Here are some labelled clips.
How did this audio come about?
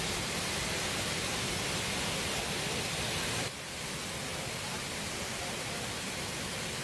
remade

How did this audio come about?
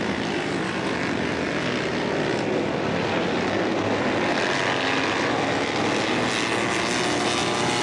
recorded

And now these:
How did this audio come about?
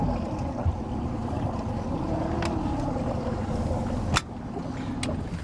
recorded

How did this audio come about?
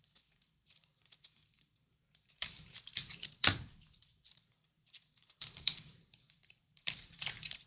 remade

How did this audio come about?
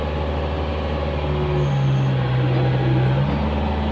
recorded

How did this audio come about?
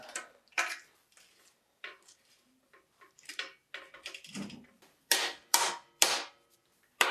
remade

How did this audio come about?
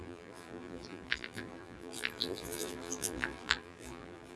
remade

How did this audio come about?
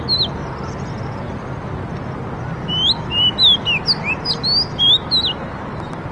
recorded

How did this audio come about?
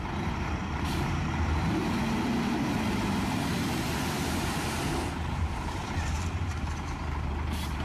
remade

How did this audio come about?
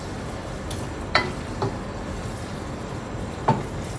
remade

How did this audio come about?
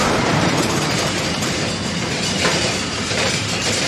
remade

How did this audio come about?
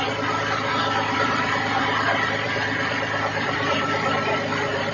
remade